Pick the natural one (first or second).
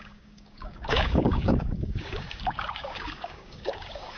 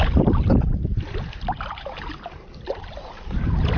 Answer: second